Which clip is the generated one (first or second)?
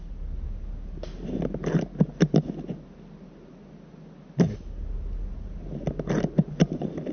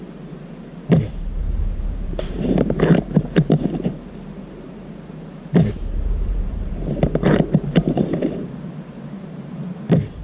second